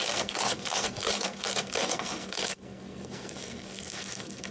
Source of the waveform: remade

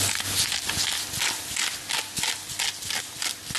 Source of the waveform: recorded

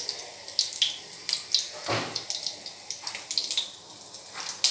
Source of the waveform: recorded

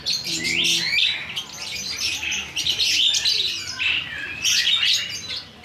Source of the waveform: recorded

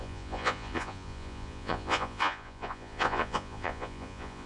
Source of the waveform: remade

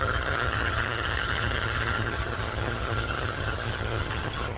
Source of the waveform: remade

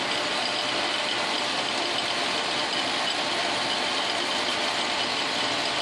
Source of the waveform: recorded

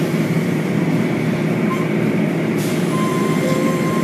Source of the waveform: remade